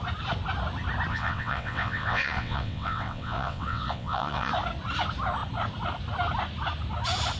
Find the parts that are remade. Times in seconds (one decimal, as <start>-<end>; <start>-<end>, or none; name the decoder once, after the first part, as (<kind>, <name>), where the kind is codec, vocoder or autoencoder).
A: 1.1-4.5 (vocoder, WaveNeXt)